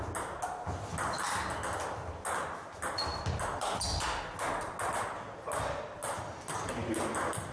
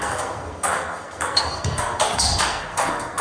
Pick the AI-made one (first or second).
second